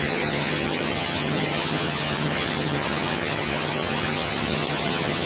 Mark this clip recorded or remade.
remade